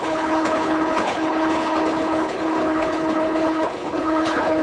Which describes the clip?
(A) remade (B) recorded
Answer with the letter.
A